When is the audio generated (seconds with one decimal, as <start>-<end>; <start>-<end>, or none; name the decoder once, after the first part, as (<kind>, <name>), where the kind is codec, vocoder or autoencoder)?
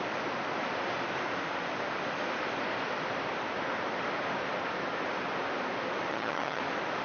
6.1-6.6 (vocoder, HiFi-GAN)